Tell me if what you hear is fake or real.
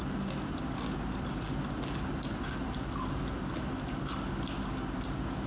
real